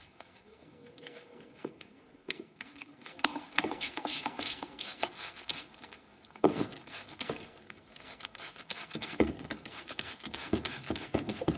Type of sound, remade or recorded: remade